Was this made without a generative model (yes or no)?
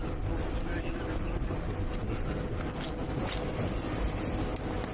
yes